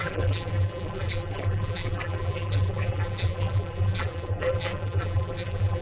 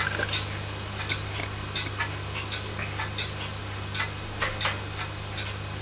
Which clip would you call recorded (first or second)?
second